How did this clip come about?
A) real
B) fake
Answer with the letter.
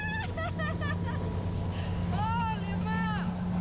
A